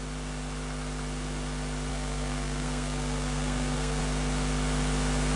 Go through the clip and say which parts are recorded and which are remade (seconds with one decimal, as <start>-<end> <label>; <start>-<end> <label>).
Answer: 0.0-1.9 recorded; 1.9-4.0 remade; 4.0-5.4 recorded

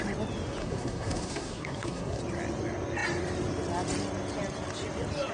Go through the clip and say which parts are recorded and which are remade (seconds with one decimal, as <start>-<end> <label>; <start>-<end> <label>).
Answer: 0.0-0.6 recorded; 0.6-2.2 remade; 2.2-5.3 recorded

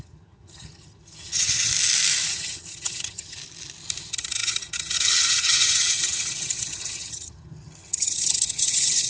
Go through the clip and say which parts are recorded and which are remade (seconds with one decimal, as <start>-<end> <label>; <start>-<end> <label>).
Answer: 0.0-1.7 remade; 1.7-2.3 recorded; 2.3-3.4 remade; 3.4-4.0 recorded; 4.0-9.1 remade